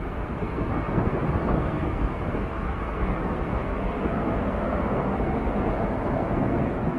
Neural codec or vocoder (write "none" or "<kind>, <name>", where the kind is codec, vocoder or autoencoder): codec, SNAC